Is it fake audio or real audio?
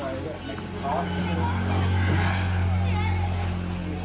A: real